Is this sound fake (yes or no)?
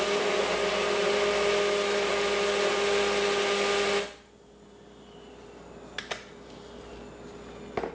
no